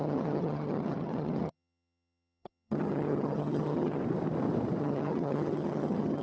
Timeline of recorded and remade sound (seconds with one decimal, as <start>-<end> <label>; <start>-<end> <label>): 0.0-4.0 remade; 4.0-4.8 recorded; 4.8-6.2 remade